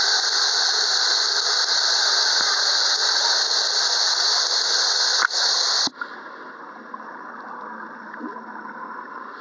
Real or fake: real